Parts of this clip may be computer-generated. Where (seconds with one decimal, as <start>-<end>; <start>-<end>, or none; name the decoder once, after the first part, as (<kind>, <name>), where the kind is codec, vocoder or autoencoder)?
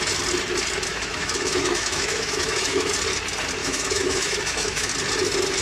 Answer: 0.9-2.9 (autoencoder, DAC-VAE); 3.6-4.9